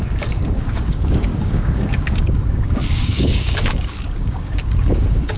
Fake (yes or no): yes